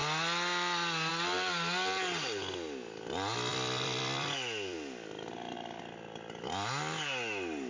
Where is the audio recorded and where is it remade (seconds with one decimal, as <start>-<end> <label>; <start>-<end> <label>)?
0.0-3.5 recorded; 3.5-5.8 remade; 5.8-7.7 recorded

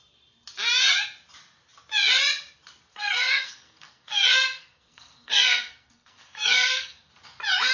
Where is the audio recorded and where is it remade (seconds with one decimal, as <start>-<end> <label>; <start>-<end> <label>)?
0.0-2.9 recorded; 2.9-7.1 remade; 7.1-7.7 recorded

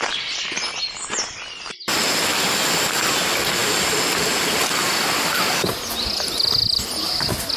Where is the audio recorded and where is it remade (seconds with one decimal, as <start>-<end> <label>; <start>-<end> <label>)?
0.0-7.6 recorded

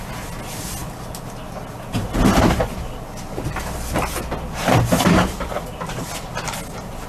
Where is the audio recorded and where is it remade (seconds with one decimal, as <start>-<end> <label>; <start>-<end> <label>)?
0.0-7.1 recorded

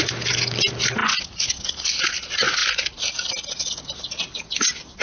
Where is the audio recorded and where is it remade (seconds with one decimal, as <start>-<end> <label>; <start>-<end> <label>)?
0.0-1.0 remade; 1.0-1.7 recorded; 1.7-5.0 remade

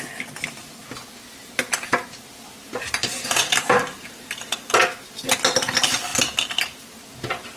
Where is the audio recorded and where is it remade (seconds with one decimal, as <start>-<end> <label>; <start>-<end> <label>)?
0.0-2.6 recorded; 2.6-4.8 remade; 4.8-7.6 recorded

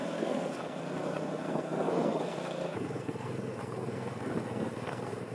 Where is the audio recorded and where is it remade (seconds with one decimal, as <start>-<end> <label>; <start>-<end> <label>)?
0.0-5.3 remade